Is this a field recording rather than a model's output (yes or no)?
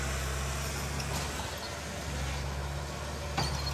yes